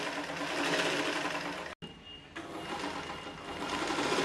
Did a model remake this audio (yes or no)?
no